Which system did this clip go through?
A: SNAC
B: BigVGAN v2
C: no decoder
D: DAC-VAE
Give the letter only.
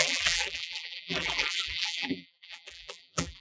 B